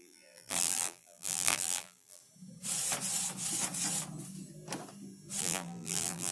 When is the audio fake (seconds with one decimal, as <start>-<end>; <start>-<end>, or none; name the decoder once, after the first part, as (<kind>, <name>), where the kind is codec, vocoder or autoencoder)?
0.0-2.2 (vocoder, BigVGAN v2); 5.4-6.3